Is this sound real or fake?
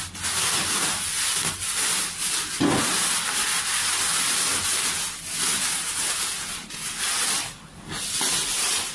real